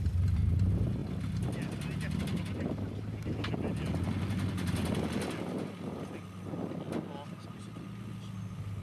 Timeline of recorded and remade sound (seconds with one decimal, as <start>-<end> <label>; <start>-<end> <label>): 0.0-8.8 recorded